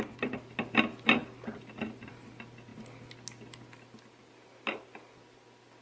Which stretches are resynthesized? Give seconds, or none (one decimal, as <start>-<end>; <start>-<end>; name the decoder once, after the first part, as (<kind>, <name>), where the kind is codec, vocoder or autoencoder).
none